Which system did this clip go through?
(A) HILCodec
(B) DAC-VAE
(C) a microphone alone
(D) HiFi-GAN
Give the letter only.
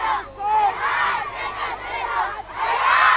C